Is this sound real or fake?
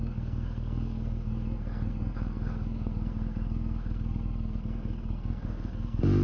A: fake